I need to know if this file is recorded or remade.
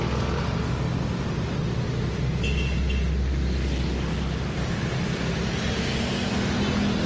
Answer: recorded